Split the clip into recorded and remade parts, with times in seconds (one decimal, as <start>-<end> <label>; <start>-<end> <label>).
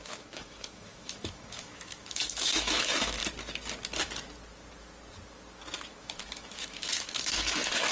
0.0-3.2 remade; 3.2-6.0 recorded; 6.0-7.9 remade